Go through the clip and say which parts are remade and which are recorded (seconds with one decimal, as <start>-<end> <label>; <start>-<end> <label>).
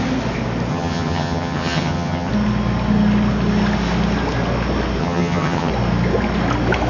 0.0-0.7 recorded; 0.7-2.3 remade; 2.3-5.0 recorded; 5.0-5.7 remade; 5.7-6.9 recorded